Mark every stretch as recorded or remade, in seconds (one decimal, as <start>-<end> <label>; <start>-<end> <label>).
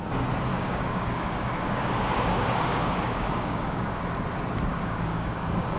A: 0.0-0.5 recorded; 0.5-4.0 remade; 4.0-4.7 recorded; 4.7-5.8 remade